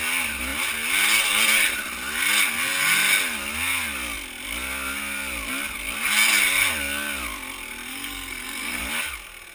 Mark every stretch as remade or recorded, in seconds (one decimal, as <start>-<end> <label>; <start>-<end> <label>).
0.0-7.9 recorded; 7.9-8.8 remade; 8.8-9.5 recorded